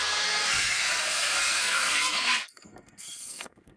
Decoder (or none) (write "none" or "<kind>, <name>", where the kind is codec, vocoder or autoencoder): codec, SNAC